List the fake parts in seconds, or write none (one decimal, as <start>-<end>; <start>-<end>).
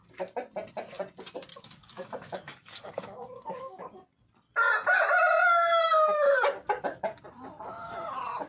1.5-3.8